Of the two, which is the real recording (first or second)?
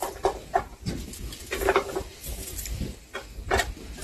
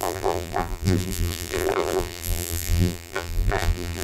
first